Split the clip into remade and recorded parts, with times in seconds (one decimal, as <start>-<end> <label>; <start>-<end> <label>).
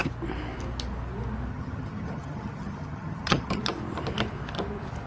0.0-1.5 recorded; 1.5-3.6 remade; 3.6-5.1 recorded